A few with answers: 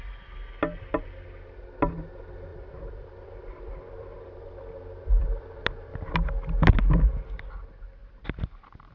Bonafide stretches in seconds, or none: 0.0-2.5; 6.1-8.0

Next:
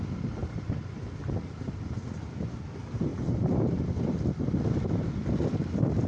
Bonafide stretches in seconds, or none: 0.0-0.4; 1.0-3.1; 3.8-6.1

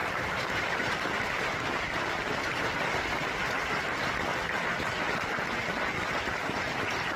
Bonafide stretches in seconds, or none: 3.6-6.8

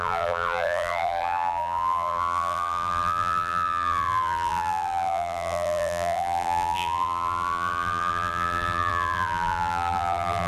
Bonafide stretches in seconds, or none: none

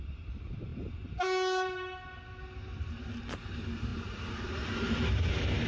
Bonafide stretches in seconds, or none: 0.0-5.7

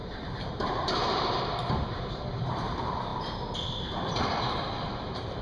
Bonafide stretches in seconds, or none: none

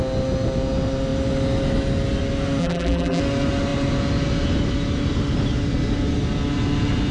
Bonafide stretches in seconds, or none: 0.0-2.6; 3.2-7.1

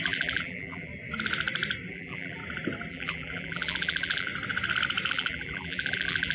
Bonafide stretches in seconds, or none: 0.9-1.9; 2.4-2.9; 4.3-5.1